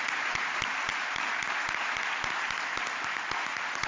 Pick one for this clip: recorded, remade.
recorded